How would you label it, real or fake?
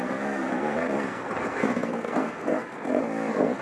fake